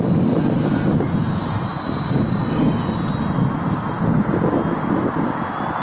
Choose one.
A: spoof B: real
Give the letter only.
B